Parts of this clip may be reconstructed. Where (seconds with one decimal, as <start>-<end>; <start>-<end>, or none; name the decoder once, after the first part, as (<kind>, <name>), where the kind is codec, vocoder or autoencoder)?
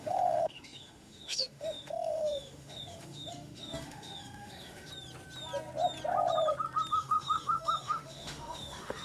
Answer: 0.0-4.9 (autoencoder, DAC-VAE); 6.9-9.0